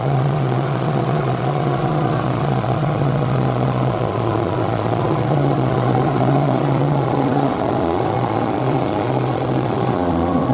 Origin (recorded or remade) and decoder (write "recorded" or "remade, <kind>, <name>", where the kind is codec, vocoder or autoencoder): remade, vocoder, Vocos